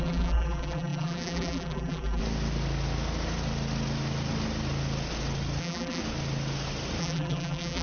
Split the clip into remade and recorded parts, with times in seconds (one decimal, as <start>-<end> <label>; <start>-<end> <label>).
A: 0.0-2.2 remade; 2.2-5.6 recorded; 5.6-6.0 remade; 6.0-7.0 recorded; 7.0-7.8 remade